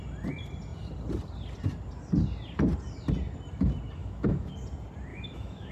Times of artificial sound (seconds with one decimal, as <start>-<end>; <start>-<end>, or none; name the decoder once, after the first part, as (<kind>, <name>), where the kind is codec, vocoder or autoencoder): 4.0-4.5 (autoencoder, DAC-VAE); 5.1-5.7